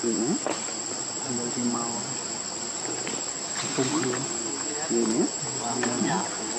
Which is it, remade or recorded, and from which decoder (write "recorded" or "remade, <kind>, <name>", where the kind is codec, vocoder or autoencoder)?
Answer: recorded